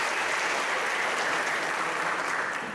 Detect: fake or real real